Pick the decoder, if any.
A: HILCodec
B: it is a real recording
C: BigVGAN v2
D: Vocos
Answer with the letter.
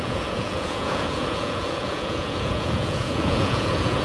D